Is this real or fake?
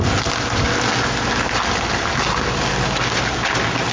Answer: real